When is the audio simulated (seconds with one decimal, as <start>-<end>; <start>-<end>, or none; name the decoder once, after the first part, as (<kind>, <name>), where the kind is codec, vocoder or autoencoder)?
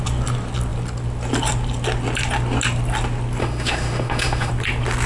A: 3.4-4.5 (autoencoder, DAC-VAE)